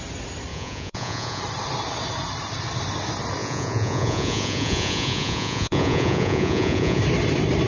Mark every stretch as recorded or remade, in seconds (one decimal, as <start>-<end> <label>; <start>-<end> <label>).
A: 0.0-0.5 recorded; 0.5-1.4 remade; 1.4-3.4 recorded; 3.4-7.0 remade; 7.0-7.7 recorded